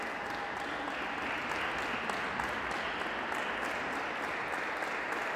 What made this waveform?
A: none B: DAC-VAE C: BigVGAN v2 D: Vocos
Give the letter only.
A